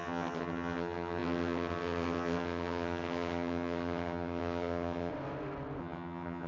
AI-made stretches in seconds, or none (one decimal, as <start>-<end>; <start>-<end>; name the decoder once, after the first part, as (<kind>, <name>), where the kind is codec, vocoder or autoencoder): 0.0-5.1 (vocoder, HiFi-GAN); 5.8-6.5